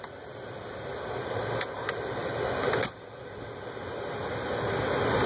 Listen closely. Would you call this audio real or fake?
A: real